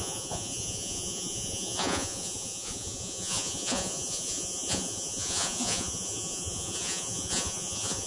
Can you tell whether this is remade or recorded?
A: remade